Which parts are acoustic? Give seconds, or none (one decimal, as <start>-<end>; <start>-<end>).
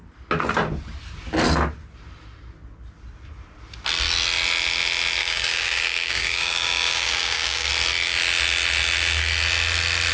0.0-5.2; 7.7-10.1